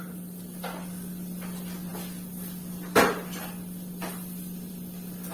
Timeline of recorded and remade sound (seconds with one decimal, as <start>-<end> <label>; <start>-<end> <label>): 0.0-5.3 recorded